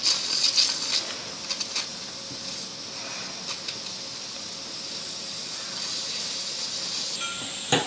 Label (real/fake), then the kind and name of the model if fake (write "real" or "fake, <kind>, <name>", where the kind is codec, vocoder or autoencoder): real